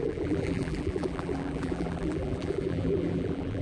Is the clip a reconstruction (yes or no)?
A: yes